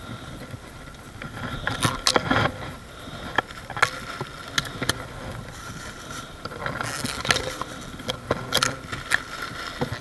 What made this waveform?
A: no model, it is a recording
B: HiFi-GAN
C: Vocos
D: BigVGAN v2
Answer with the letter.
A